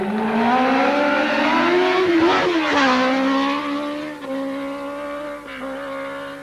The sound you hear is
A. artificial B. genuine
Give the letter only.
B